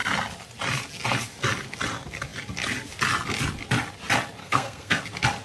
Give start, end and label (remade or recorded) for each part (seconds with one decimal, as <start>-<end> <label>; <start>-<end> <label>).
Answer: 0.0-4.4 recorded; 4.4-5.0 remade; 5.0-5.4 recorded